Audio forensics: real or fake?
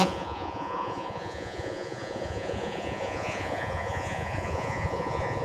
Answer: fake